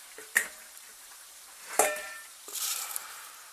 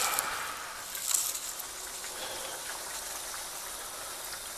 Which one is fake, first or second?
first